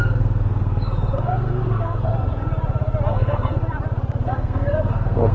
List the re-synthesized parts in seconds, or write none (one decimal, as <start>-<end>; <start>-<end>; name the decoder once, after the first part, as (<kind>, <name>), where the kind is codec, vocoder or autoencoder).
0.0-2.1 (codec, SNAC); 3.1-3.6; 4.2-5.3